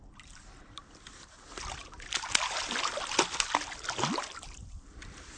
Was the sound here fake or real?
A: real